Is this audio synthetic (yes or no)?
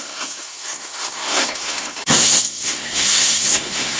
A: yes